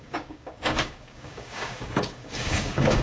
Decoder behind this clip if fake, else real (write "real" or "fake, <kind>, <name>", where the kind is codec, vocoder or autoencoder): fake, codec, DAC